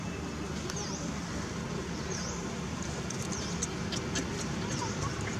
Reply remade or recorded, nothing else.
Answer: recorded